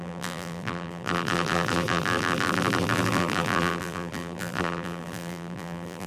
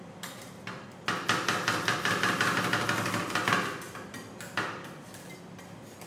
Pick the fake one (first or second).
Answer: first